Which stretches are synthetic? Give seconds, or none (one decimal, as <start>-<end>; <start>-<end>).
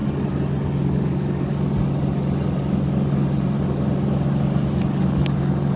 0.8-1.5; 5.0-5.8